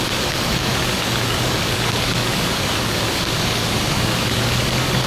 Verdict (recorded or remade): remade